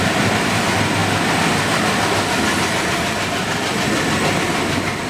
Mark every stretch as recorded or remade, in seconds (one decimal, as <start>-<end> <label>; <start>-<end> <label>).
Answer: 0.0-1.0 remade; 1.0-4.1 recorded; 4.1-5.1 remade